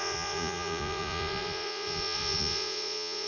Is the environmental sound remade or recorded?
remade